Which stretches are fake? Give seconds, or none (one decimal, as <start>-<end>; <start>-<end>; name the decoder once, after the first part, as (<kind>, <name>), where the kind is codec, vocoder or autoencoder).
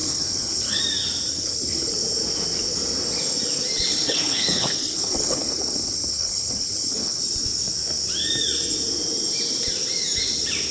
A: 0.0-0.8 (codec, HILCodec); 1.3-1.9; 3.9-7.2